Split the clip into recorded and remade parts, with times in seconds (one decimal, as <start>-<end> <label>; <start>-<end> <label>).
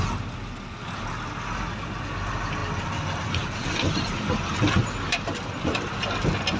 0.0-6.6 recorded